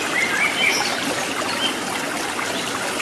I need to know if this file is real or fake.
real